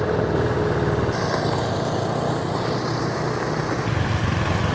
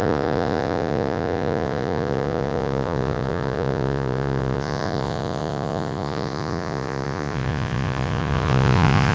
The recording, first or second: first